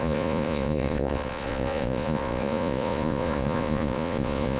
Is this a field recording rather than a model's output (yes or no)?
no